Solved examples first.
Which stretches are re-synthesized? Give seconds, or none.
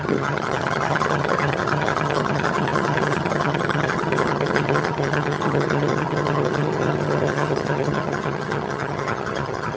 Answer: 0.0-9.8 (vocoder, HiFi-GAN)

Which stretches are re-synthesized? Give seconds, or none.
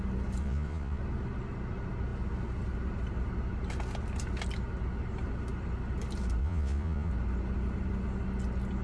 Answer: 0.4-1.0 (vocoder, Vocos); 6.4-7.1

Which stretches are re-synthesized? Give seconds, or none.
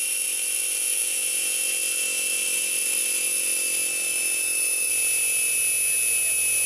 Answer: 0.0-4.9 (autoencoder, DAC-VAE)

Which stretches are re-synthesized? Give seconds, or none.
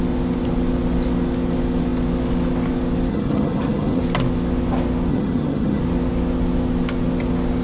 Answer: 3.1-4.0 (vocoder, HiFi-GAN); 5.1-5.8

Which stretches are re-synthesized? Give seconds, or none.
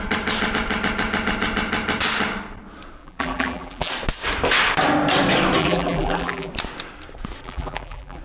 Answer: 3.0-3.9 (vocoder, BigVGAN v2); 5.6-6.5; 7.4-8.2